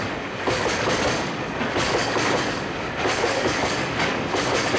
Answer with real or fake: fake